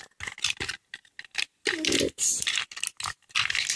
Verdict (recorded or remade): recorded